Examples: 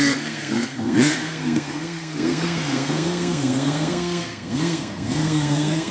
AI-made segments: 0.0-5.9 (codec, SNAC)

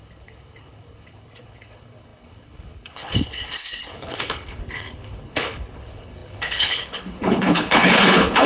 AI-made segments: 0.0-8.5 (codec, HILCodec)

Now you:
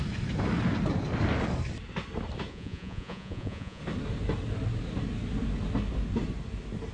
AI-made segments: 2.5-3.8 (vocoder, Vocos)